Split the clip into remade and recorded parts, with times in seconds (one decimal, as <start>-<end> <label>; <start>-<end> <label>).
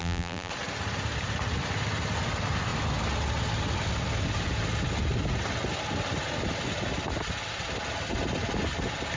0.0-0.5 remade; 0.5-9.2 recorded